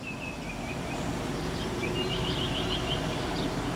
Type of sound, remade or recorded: recorded